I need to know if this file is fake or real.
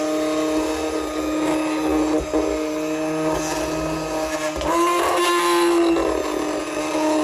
real